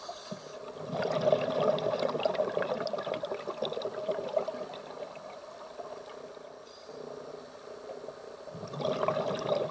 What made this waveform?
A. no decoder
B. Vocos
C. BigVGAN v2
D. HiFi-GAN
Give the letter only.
C